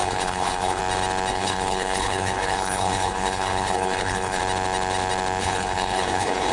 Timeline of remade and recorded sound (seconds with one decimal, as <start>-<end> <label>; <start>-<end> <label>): 0.0-0.8 remade; 0.8-1.3 recorded; 1.3-4.4 remade; 4.4-5.4 recorded; 5.4-6.5 remade